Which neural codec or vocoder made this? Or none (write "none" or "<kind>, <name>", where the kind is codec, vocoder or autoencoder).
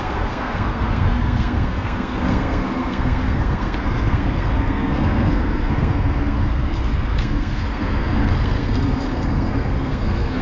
codec, SNAC